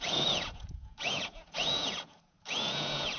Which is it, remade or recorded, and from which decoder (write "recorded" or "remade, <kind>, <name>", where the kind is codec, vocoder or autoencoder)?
remade, vocoder, Vocos